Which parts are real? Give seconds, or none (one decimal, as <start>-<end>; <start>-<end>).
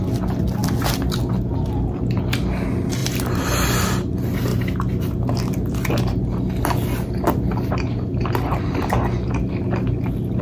0.0-3.0; 3.8-10.4